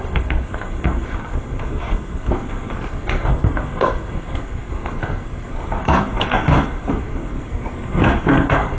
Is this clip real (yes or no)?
no